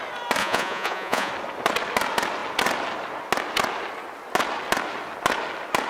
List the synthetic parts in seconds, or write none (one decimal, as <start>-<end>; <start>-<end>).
0.4-1.3

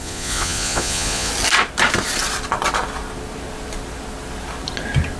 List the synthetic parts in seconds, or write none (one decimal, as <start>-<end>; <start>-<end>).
0.0-1.3

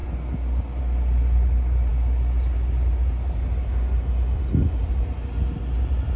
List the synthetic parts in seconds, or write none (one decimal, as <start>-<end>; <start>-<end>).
none

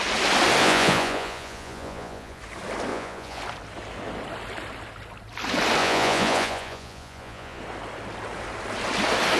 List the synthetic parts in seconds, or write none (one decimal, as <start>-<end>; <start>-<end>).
0.6-2.4; 2.9-3.4; 5.8-7.6

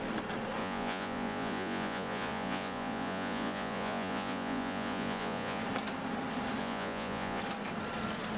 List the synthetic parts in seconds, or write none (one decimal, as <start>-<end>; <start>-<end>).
0.6-5.6; 6.6-7.4